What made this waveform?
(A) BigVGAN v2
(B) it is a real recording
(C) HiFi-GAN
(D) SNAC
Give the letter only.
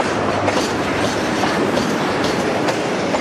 A